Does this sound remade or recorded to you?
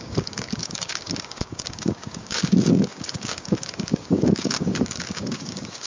remade